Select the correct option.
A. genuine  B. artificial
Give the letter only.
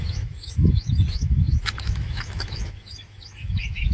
B